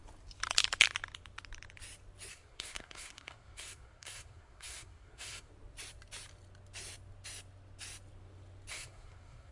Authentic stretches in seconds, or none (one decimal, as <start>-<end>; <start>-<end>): 0.0-2.3; 5.5-8.7